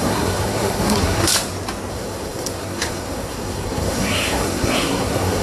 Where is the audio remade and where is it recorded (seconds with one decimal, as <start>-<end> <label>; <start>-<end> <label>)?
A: 0.0-1.3 remade; 1.3-1.9 recorded; 1.9-5.4 remade